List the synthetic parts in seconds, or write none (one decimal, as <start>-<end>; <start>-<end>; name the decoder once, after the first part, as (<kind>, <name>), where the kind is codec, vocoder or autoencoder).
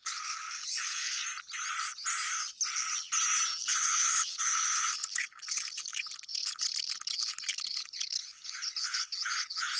0.0-1.2 (codec, HILCodec); 3.6-9.8